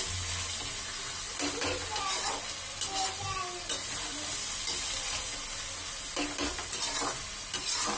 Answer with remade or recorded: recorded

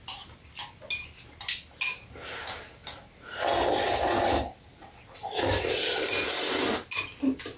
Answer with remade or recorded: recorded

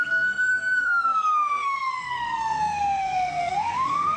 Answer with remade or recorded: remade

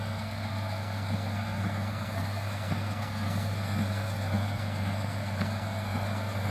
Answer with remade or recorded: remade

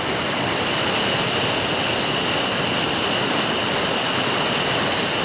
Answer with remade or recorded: recorded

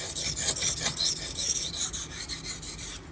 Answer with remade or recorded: recorded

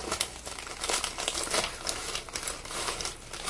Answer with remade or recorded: recorded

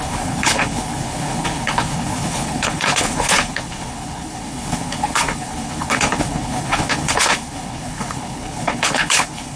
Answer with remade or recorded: remade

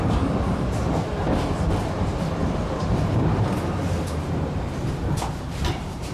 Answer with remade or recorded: remade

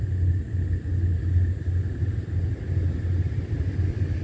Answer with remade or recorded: recorded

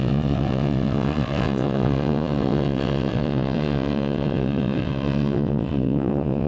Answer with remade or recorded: remade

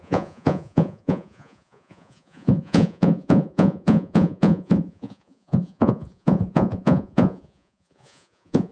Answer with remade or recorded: remade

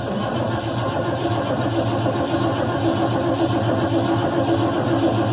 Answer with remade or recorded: recorded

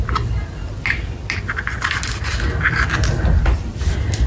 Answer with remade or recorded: recorded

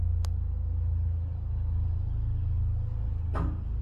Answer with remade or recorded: recorded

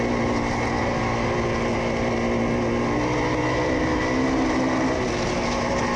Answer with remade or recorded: recorded